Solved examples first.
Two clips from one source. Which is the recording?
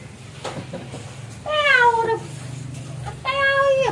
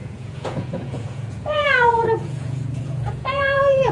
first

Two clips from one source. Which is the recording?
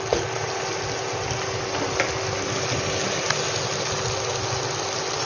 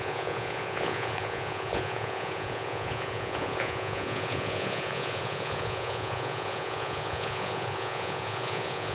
first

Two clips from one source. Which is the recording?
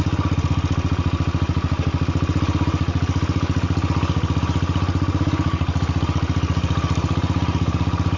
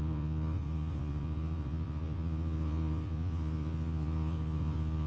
first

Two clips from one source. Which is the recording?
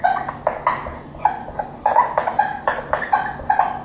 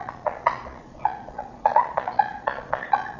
first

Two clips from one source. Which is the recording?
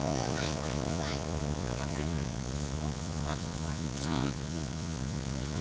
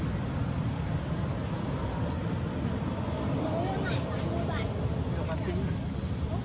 second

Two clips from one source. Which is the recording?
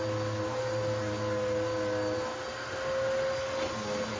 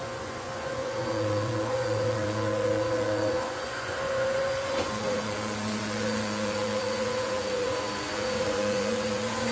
first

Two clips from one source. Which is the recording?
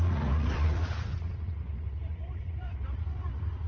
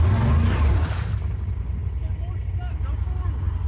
second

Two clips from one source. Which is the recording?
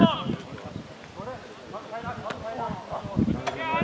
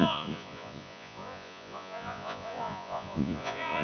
first